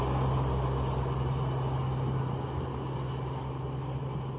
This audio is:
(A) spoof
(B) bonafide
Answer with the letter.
B